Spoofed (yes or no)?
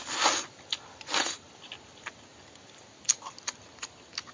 no